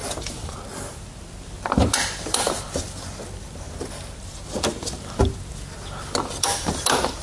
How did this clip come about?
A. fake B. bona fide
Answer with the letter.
B